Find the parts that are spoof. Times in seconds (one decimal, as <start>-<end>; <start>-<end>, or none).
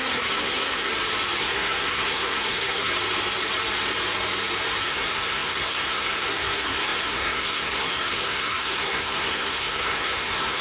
0.0-0.9; 1.4-2.9; 4.8-10.6